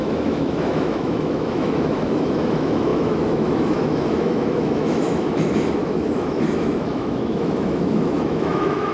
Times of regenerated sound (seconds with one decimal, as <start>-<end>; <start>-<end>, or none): 0.0-8.9